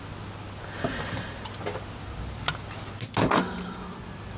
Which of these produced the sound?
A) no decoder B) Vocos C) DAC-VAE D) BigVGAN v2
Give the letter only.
A